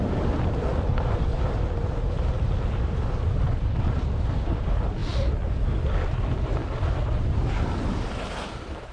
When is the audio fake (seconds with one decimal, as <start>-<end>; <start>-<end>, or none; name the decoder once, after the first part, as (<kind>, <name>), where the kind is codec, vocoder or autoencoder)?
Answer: none